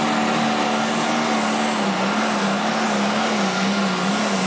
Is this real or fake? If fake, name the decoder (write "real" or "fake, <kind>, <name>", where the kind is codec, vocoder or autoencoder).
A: real